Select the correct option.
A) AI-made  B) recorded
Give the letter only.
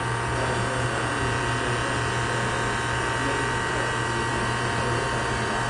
B